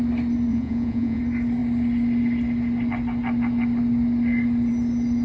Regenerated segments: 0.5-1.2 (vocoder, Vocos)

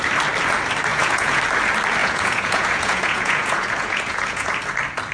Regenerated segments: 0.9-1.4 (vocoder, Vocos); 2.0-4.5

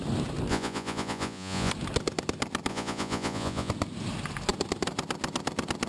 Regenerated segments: 0.5-1.7 (vocoder, Vocos); 2.7-3.7